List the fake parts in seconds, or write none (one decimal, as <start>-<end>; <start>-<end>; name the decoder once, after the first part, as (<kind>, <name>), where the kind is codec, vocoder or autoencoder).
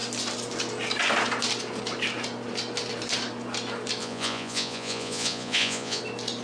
4.0-6.0 (vocoder, Vocos)